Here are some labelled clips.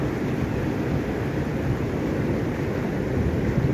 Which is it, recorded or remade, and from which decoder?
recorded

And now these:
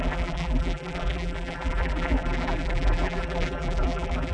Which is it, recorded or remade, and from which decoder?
remade, vocoder, BigVGAN v2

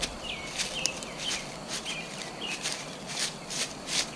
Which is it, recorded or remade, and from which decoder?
remade, vocoder, BigVGAN v2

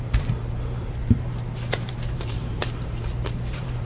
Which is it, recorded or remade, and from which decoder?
remade, vocoder, BigVGAN v2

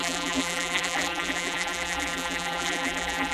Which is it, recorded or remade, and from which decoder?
remade, vocoder, BigVGAN v2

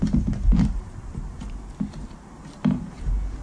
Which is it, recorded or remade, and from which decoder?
remade, vocoder, BigVGAN v2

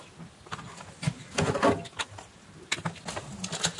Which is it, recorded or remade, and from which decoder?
recorded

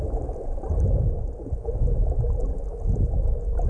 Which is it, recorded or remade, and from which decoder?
recorded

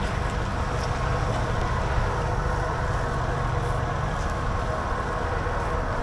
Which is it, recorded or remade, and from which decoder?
recorded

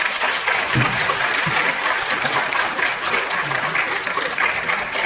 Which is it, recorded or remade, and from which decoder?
remade, vocoder, BigVGAN v2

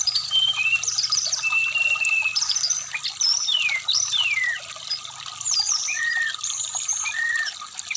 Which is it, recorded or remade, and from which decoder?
remade, vocoder, BigVGAN v2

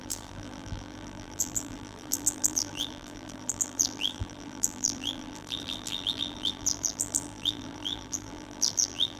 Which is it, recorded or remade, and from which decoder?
remade, vocoder, BigVGAN v2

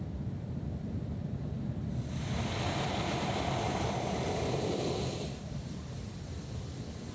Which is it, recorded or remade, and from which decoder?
remade, vocoder, BigVGAN v2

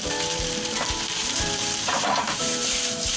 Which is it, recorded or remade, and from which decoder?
remade, vocoder, BigVGAN v2